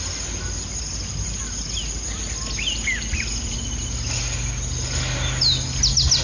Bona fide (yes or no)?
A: yes